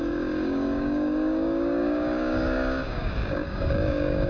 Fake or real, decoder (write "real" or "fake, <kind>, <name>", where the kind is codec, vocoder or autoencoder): fake, codec, DAC